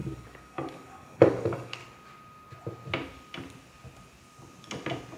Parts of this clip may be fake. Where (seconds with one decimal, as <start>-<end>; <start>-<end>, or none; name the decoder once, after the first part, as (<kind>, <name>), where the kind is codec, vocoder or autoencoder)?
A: 0.0-1.8 (codec, DAC)

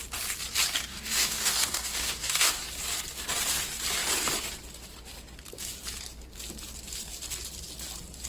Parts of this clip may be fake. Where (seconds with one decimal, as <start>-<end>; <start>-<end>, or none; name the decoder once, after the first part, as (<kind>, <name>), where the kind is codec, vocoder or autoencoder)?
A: 0.9-2.5 (codec, DAC)